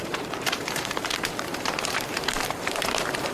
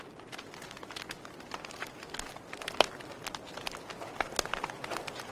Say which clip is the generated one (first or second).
first